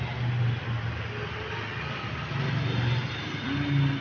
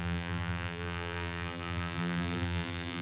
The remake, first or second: second